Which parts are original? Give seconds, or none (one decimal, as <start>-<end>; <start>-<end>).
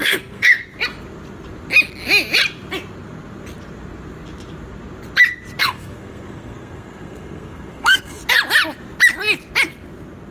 0.6-5.6; 8.2-10.3